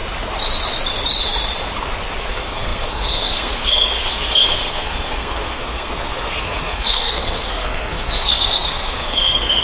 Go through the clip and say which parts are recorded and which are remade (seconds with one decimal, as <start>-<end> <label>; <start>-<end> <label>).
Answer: 0.0-2.2 recorded; 2.2-9.6 remade